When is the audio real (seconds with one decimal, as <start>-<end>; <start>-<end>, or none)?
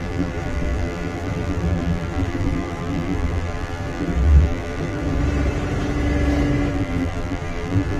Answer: 5.2-6.7